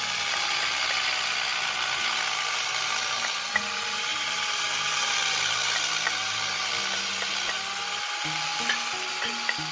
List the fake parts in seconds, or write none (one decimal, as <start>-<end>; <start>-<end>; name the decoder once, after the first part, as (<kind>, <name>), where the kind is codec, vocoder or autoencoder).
none